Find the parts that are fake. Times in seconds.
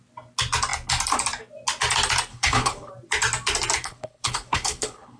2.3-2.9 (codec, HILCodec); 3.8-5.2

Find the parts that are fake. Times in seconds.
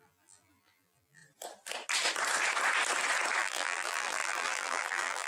0.0-1.2 (vocoder, BigVGAN v2); 3.4-5.3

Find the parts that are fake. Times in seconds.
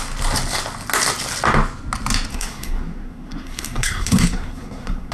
2.3-5.1 (codec, SNAC)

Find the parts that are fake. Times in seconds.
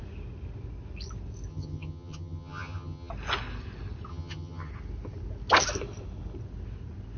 1.5-3.1 (vocoder, HiFi-GAN); 4.1-4.7